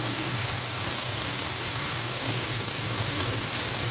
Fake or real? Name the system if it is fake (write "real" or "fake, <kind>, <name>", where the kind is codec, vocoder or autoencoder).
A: fake, codec, DAC